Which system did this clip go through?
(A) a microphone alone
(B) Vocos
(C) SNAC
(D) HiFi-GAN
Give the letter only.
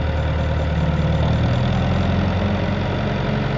A